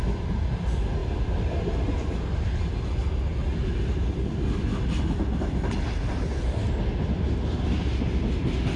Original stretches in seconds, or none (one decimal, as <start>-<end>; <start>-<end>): 3.3-6.1; 6.6-8.8